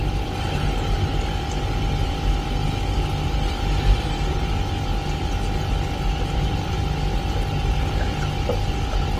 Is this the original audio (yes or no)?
yes